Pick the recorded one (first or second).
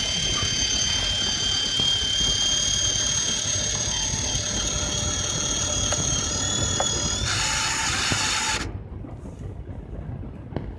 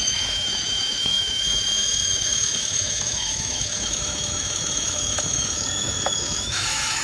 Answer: first